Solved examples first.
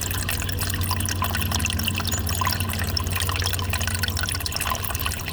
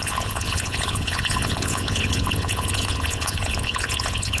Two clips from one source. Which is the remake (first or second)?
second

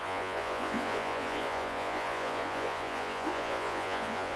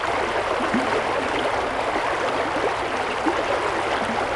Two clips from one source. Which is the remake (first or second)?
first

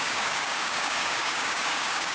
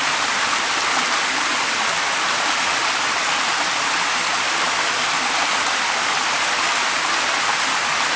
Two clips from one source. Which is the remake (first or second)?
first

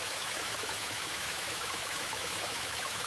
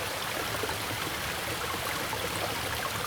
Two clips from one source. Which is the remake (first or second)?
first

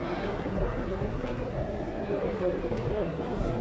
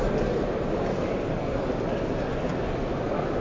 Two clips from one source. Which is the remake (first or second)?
first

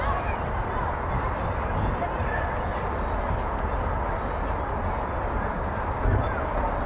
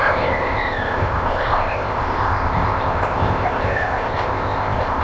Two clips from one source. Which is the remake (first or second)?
second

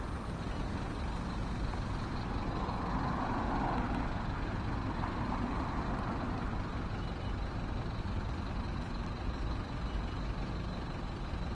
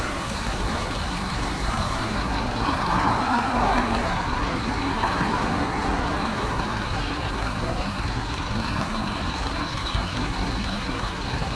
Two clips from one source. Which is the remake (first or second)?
second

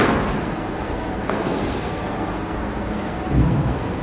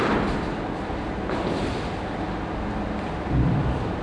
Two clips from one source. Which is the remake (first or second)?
first